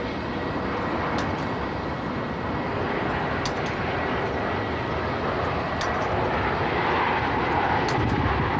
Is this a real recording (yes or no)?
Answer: yes